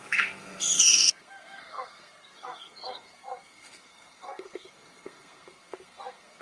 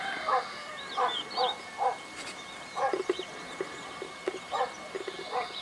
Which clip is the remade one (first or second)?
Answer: first